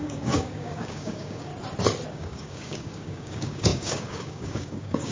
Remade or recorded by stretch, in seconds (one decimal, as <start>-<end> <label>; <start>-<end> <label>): 0.0-1.5 remade; 1.5-2.1 recorded; 2.1-5.1 remade